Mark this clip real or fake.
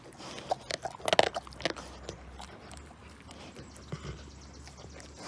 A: real